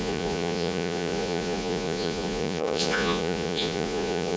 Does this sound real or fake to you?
fake